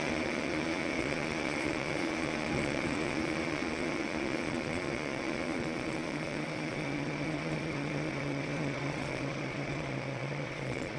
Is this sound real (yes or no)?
no